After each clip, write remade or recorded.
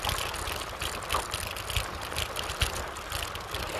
recorded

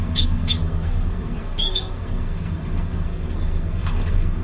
remade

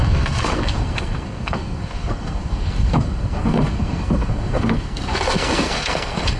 remade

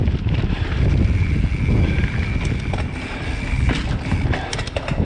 recorded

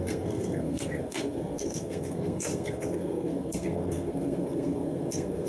remade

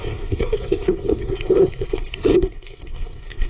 remade